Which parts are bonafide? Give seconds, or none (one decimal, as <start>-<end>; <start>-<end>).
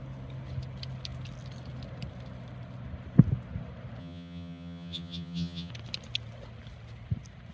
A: 0.0-4.0; 5.7-7.5